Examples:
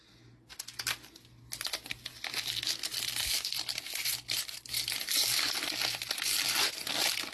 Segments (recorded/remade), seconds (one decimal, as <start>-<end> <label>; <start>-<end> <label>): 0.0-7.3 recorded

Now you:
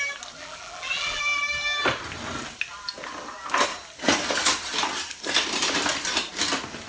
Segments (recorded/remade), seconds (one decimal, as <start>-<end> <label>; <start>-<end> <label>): 0.0-0.4 recorded; 0.4-1.2 remade; 1.2-6.9 recorded

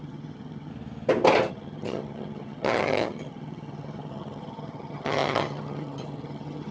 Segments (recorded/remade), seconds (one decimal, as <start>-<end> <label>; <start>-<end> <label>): 0.0-0.7 remade; 0.7-1.5 recorded; 1.5-6.7 remade